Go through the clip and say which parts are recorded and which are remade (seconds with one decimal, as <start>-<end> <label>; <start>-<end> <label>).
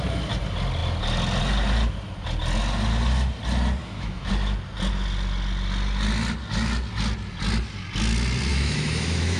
0.0-3.8 recorded; 3.8-4.3 remade; 4.3-8.5 recorded; 8.5-9.4 remade